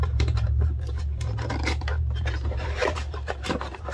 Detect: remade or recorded remade